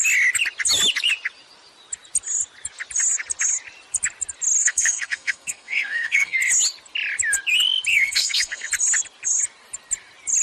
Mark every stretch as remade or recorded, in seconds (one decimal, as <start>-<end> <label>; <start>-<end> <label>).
0.0-4.6 recorded; 4.6-6.4 remade; 6.4-7.9 recorded; 7.9-8.7 remade; 8.7-10.4 recorded